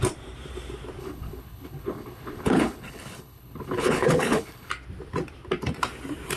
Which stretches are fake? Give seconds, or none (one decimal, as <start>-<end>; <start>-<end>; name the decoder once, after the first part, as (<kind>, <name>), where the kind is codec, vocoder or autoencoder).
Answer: 1.0-4.7 (codec, HILCodec)